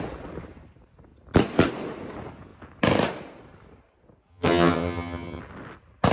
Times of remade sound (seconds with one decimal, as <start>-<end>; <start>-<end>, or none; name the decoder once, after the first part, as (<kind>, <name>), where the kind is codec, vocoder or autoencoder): 4.3-5.4 (vocoder, HiFi-GAN)